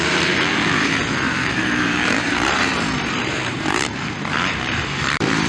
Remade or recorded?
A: remade